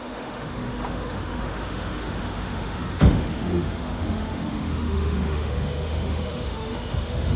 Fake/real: fake